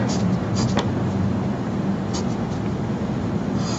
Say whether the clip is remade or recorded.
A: recorded